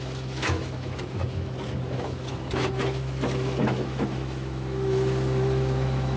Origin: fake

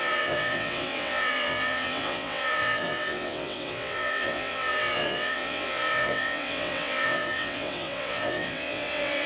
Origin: fake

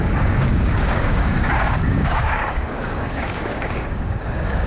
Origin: fake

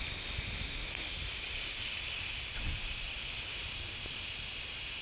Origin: real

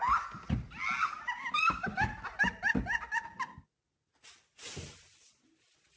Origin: real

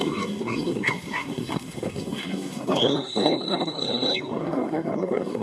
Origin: fake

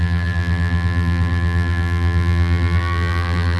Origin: fake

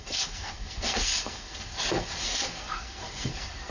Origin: fake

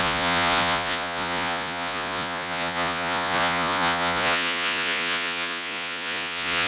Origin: fake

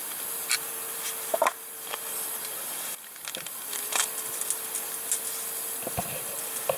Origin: real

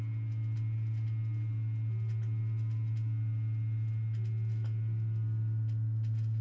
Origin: real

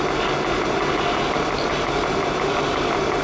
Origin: real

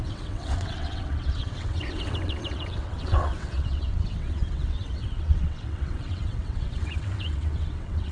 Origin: fake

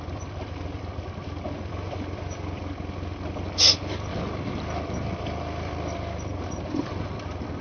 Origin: real